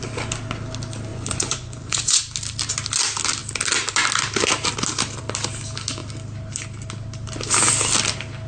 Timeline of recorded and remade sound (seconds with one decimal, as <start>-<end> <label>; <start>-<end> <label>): 0.0-1.1 recorded; 1.1-2.2 remade; 2.2-8.5 recorded

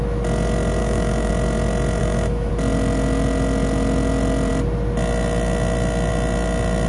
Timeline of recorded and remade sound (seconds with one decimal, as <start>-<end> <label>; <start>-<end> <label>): 0.0-0.8 recorded; 0.8-1.3 remade; 1.3-2.0 recorded; 2.0-2.5 remade; 2.5-6.9 recorded

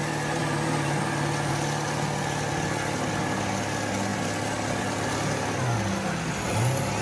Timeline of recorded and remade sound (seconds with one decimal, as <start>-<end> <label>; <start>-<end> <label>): 0.0-7.0 recorded

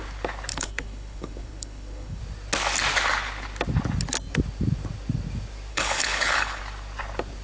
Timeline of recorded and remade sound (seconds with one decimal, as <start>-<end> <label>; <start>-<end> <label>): 0.0-0.5 recorded; 0.5-2.2 remade; 2.2-5.7 recorded; 5.7-6.6 remade; 6.6-7.4 recorded

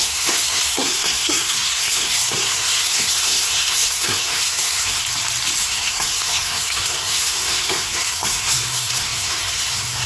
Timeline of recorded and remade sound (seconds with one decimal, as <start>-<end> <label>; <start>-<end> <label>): 0.0-5.0 remade; 5.0-5.6 recorded; 5.6-10.1 remade

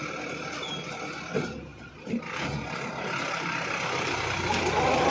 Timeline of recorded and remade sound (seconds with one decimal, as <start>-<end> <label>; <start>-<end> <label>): 0.0-5.1 recorded

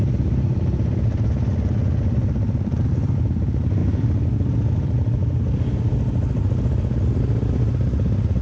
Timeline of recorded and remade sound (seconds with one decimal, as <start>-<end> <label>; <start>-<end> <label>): 0.0-8.4 recorded

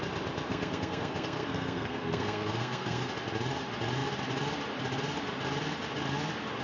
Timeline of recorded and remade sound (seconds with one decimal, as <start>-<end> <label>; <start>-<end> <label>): 0.0-0.5 recorded; 0.5-3.1 remade; 3.1-6.6 recorded